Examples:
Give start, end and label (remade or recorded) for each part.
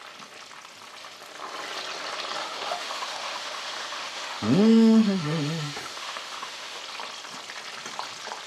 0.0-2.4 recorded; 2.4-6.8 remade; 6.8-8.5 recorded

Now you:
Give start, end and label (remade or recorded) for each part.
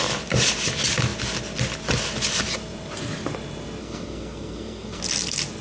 0.0-3.8 recorded; 3.8-5.0 remade; 5.0-5.6 recorded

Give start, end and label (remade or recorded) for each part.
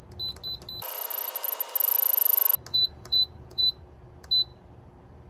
0.0-2.7 recorded; 2.7-3.8 remade; 3.8-5.3 recorded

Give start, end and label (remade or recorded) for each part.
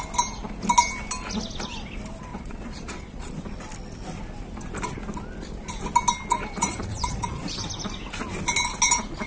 0.0-2.3 recorded; 2.3-3.3 remade; 3.3-6.3 recorded; 6.3-7.4 remade; 7.4-9.3 recorded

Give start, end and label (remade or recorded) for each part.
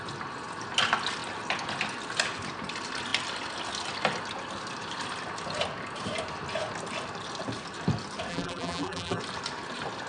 0.0-8.3 recorded; 8.3-9.2 remade; 9.2-10.1 recorded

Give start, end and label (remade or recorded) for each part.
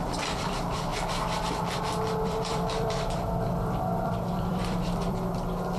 0.0-0.9 remade; 0.9-2.2 recorded; 2.2-5.8 remade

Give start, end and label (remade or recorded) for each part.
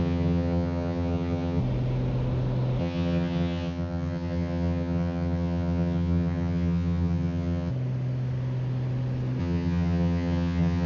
0.0-1.6 remade; 1.6-2.8 recorded; 2.8-7.7 remade; 7.7-9.4 recorded; 9.4-10.9 remade